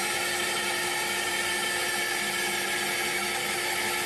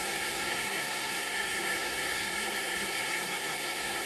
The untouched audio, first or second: first